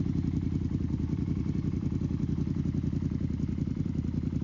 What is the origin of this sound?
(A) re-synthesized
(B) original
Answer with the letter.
A